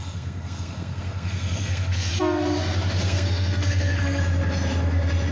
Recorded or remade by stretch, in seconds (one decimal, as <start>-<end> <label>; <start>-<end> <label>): 0.0-2.1 remade; 2.1-3.0 recorded; 3.0-4.2 remade; 4.2-5.3 recorded